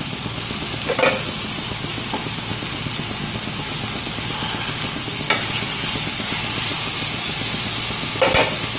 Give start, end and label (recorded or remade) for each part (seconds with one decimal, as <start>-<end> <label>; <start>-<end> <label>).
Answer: 0.0-6.7 recorded; 6.7-7.3 remade; 7.3-8.8 recorded

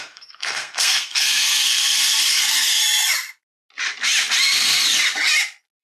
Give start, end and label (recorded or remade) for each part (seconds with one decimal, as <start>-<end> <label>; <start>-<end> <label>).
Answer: 0.0-2.8 remade; 2.8-5.8 recorded

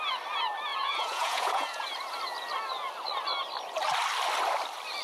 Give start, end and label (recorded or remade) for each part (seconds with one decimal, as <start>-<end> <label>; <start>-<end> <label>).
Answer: 0.0-0.7 recorded; 0.7-1.8 remade; 1.8-5.0 recorded

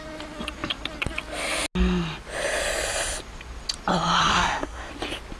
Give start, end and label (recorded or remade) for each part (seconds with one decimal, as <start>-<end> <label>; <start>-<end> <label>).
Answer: 0.0-4.2 recorded; 4.2-4.9 remade; 4.9-5.4 recorded

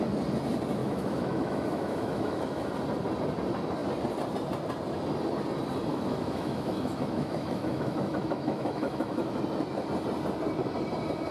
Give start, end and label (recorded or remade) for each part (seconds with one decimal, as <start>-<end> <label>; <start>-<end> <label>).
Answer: 0.0-0.8 recorded; 0.8-2.7 remade; 2.7-5.9 recorded; 5.9-9.4 remade; 9.4-11.3 recorded

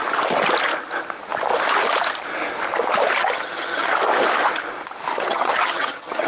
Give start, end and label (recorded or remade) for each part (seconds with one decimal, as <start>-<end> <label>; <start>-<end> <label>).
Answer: 0.0-3.2 recorded; 3.2-3.9 remade; 3.9-5.1 recorded; 5.1-6.3 remade

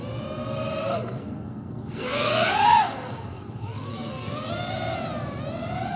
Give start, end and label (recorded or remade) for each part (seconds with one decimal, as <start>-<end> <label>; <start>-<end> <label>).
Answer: 0.0-0.9 recorded; 0.9-4.5 remade; 4.5-6.0 recorded